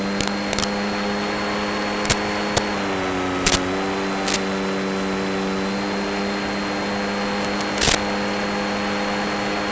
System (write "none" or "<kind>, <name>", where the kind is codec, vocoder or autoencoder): none